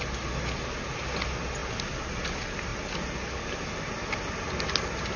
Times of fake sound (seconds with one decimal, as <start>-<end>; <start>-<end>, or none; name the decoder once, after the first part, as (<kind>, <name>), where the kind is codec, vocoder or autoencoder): none